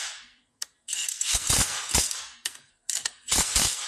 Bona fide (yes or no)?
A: no